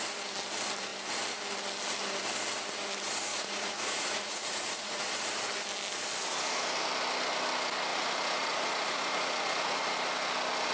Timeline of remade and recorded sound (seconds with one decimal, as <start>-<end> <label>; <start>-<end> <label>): 0.0-3.3 recorded; 3.3-5.0 remade; 5.0-7.9 recorded; 7.9-9.8 remade; 9.8-10.7 recorded